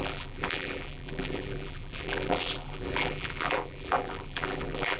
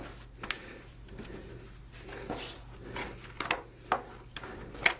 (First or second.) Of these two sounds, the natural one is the second